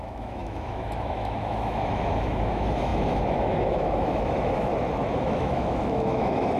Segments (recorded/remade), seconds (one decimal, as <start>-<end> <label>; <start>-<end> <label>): 0.0-4.7 remade; 4.7-5.2 recorded; 5.2-6.6 remade